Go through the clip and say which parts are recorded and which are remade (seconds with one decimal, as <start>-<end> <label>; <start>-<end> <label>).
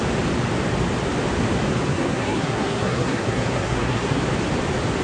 0.0-1.9 recorded; 1.9-4.2 remade; 4.2-5.0 recorded